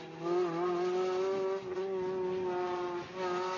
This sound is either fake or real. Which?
real